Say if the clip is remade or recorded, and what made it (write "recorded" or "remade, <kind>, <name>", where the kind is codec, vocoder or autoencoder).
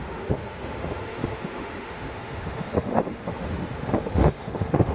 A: remade, autoencoder, DAC-VAE